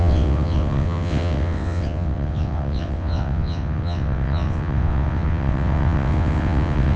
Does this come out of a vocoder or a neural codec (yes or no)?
yes